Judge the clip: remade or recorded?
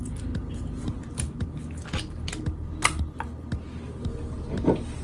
recorded